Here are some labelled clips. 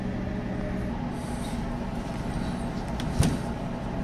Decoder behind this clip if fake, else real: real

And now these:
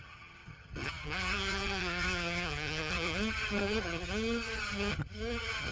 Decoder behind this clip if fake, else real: fake, vocoder, HiFi-GAN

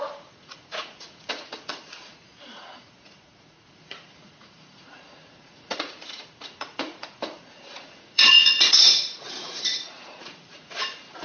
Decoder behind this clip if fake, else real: fake, vocoder, Vocos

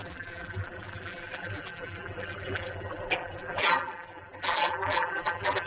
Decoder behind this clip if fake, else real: fake, vocoder, BigVGAN v2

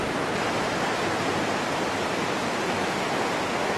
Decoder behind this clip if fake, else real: real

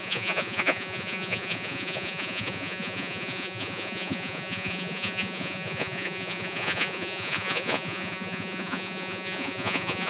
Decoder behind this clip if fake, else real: fake, vocoder, Vocos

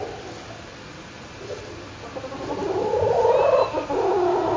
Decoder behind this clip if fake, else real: real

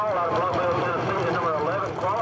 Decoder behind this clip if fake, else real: fake, vocoder, BigVGAN v2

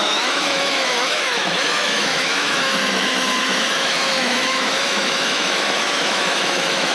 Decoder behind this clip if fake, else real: fake, autoencoder, DAC-VAE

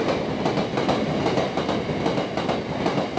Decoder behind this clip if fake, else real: real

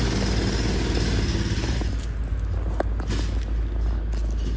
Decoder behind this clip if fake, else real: real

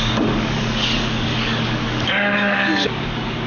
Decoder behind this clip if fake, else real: fake, codec, DAC